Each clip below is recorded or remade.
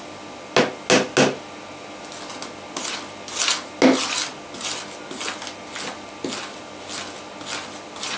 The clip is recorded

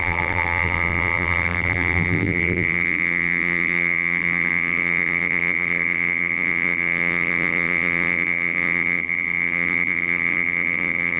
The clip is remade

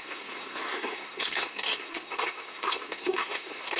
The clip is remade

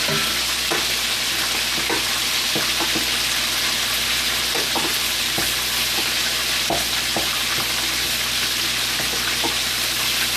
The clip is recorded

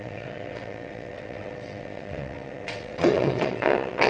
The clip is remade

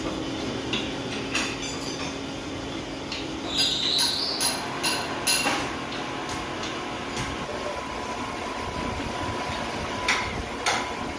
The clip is recorded